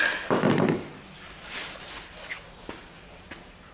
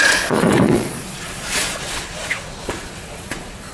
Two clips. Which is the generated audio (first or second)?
second